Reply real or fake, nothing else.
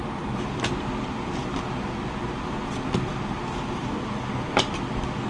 real